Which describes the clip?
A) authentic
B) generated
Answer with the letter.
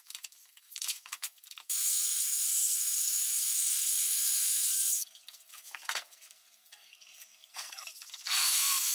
B